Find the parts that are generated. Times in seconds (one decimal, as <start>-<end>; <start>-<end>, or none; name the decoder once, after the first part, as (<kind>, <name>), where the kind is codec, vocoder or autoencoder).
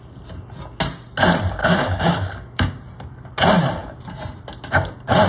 1.6-2.8 (codec, DAC)